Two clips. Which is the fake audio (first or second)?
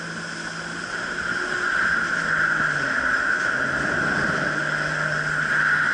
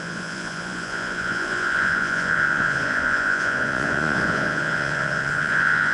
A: second